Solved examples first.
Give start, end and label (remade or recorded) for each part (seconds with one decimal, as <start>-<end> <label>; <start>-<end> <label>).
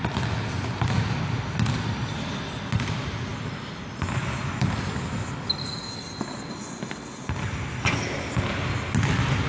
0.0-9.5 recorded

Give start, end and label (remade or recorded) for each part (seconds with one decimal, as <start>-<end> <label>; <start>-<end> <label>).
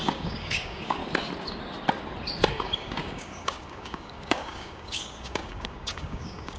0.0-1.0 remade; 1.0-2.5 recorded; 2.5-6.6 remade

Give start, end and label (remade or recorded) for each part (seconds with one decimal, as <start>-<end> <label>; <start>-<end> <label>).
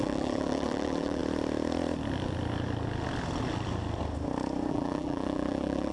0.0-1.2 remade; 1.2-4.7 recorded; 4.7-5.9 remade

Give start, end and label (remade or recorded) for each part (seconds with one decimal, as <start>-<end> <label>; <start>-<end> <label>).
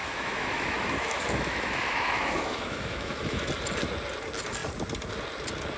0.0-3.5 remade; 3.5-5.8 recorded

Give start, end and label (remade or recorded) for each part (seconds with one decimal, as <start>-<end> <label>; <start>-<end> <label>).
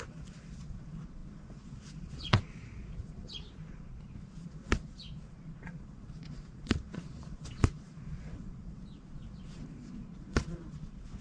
0.0-3.2 remade; 3.2-3.7 recorded; 3.7-11.2 remade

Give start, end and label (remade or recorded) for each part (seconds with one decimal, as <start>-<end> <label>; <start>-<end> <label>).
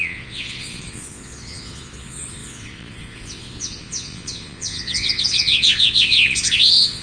0.0-7.0 remade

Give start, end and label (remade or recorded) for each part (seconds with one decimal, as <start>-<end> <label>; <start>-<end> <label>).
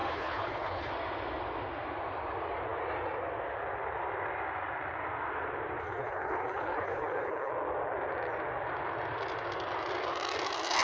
0.0-0.9 remade; 0.9-5.8 recorded; 5.8-7.5 remade; 7.5-10.8 recorded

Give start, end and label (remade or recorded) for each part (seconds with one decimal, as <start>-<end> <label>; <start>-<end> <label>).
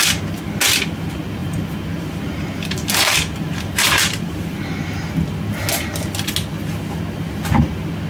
0.0-1.4 recorded; 1.4-5.1 remade; 5.1-8.1 recorded